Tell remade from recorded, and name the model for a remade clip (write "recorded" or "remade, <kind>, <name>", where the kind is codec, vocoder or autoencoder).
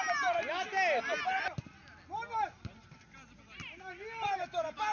recorded